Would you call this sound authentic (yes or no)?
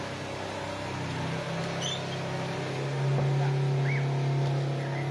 yes